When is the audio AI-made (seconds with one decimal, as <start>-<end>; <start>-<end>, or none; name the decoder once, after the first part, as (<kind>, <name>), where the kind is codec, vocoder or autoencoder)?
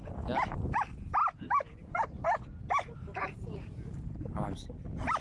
1.2-4.3 (vocoder, BigVGAN v2)